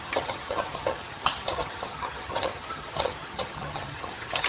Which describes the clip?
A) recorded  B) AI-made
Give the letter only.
B